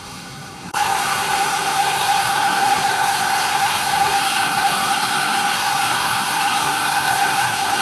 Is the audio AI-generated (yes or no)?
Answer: yes